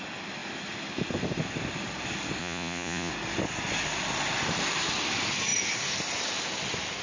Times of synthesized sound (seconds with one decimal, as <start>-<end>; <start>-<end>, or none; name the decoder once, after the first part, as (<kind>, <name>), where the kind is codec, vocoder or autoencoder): 2.4-3.1 (vocoder, Vocos)